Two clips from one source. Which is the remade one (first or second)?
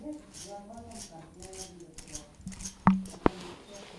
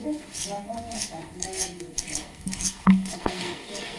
second